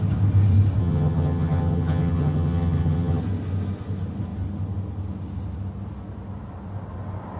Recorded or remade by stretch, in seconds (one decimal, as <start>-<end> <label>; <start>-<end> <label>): 0.0-0.8 recorded; 0.8-3.2 remade; 3.2-7.4 recorded